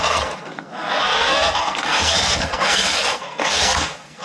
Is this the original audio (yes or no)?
no